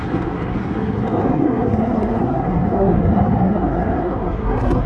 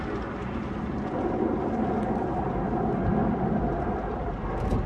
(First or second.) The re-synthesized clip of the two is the first